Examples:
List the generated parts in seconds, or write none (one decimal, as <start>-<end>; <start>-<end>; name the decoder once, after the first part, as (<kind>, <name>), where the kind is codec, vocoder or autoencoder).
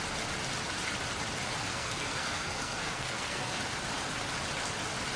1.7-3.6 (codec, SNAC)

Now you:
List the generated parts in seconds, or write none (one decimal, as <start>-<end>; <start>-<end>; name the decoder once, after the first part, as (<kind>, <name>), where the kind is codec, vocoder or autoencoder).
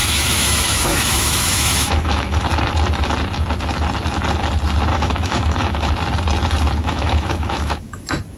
0.0-2.4 (autoencoder, DAC-VAE); 4.9-5.9; 6.8-8.0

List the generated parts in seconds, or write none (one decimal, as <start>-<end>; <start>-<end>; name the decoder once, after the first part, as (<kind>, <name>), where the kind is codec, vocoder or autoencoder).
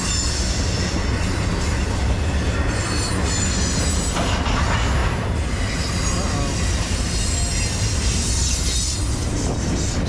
none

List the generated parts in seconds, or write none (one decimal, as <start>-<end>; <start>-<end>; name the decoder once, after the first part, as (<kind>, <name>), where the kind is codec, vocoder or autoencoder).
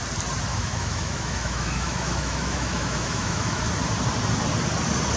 0.5-3.6 (autoencoder, DAC-VAE)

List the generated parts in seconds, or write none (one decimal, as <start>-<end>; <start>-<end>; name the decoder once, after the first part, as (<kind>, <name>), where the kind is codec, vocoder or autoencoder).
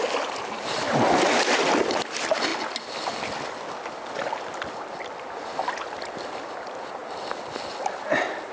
none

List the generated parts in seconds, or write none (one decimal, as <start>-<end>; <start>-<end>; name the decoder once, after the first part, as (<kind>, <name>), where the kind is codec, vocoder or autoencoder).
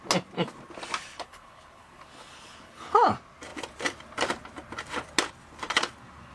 1.1-3.1 (codec, HILCodec)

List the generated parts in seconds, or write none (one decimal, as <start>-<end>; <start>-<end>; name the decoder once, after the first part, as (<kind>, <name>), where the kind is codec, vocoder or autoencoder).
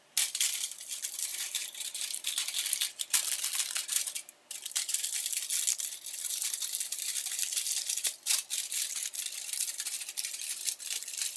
1.3-2.3 (vocoder, BigVGAN v2)